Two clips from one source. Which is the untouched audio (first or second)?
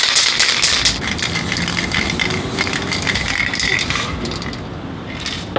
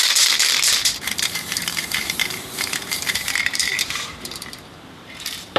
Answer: first